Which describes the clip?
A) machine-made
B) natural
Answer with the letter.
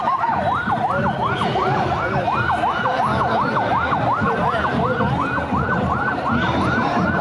A